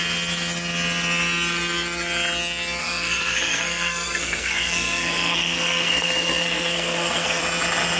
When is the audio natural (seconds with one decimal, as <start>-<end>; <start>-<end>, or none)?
0.0-2.8; 7.4-8.0